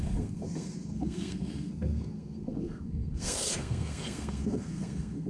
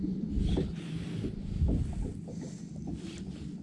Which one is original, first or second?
second